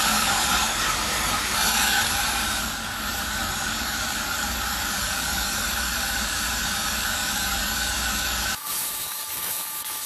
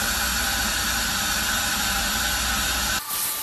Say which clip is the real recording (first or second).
second